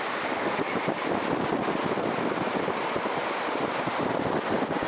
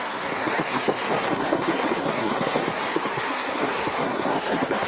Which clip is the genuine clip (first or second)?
first